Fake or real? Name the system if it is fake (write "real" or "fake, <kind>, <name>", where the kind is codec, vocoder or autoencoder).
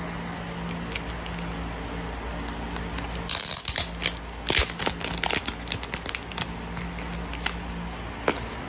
real